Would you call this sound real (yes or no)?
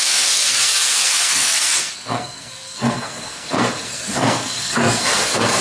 no